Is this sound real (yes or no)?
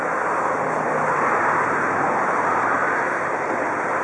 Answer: yes